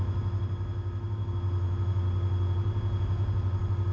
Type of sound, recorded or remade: recorded